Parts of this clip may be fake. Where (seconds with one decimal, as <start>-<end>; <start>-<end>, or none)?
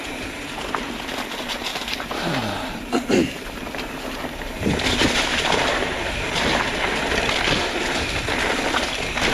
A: 1.7-6.8